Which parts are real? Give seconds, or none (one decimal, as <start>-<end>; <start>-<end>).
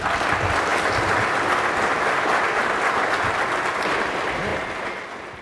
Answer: 0.0-5.4